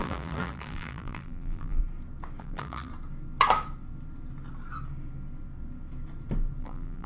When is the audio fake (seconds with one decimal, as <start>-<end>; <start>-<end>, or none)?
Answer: 0.0-1.8; 2.4-2.9; 6.6-7.1